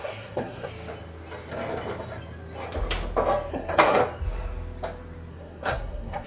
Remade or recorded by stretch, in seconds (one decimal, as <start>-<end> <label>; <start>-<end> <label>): 0.0-0.7 remade; 0.7-3.5 recorded; 3.5-4.0 remade; 4.0-5.3 recorded; 5.3-6.3 remade